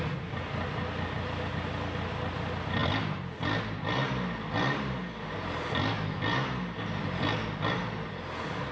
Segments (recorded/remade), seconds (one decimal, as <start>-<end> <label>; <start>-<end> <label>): 0.0-8.7 recorded